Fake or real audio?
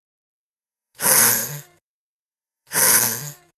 fake